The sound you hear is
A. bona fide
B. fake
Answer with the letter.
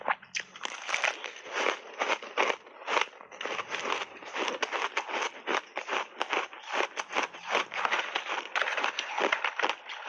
A